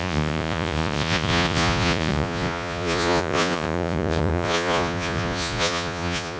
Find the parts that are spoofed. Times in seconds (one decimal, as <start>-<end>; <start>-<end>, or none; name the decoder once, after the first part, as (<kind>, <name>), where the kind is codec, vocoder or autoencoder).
0.0-6.4 (vocoder, Vocos)